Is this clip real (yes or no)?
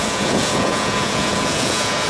no